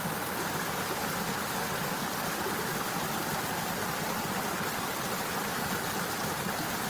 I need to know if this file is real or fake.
real